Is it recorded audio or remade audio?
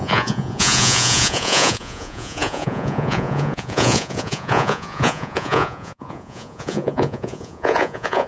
remade